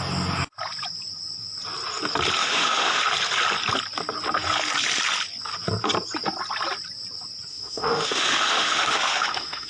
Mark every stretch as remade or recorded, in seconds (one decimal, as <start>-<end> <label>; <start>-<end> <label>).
0.0-2.4 recorded; 2.4-3.0 remade; 3.0-7.5 recorded; 7.5-9.7 remade